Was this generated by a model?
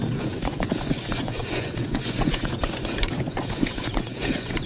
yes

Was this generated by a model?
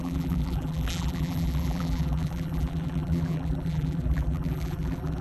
yes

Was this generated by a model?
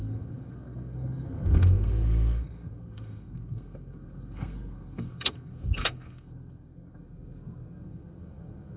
yes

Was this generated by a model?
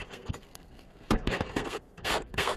yes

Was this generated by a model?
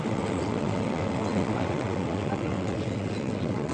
yes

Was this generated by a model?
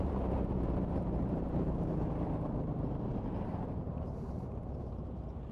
yes